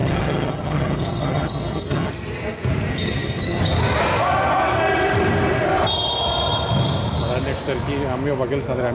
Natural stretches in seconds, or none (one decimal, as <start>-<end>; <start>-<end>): 2.1-2.9; 3.6-8.9